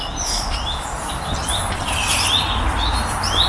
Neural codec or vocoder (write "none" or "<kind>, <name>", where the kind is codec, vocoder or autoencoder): none